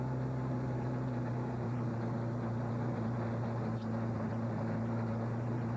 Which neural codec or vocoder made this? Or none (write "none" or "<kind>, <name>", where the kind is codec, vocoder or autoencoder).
none